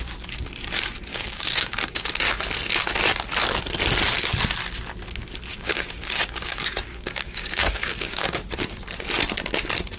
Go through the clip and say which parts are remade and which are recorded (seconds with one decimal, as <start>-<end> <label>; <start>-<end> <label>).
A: 0.0-1.1 recorded; 1.1-2.4 remade; 2.4-5.5 recorded; 5.5-8.5 remade; 8.5-10.0 recorded